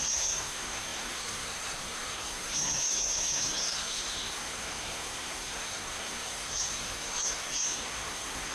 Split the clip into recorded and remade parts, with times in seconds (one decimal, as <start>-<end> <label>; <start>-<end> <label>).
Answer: 0.0-8.5 remade